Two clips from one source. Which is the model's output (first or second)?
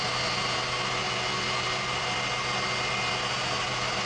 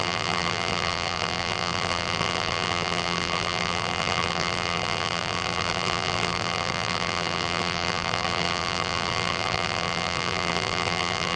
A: second